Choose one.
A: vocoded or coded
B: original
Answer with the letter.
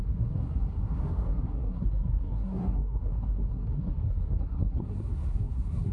A